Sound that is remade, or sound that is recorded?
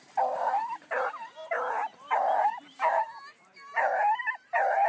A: remade